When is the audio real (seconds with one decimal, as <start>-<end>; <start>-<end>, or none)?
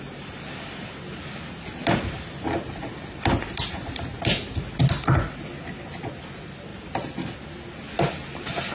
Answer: 0.0-8.7